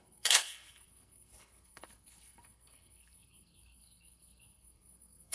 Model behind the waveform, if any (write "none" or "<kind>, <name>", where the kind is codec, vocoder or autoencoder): codec, SNAC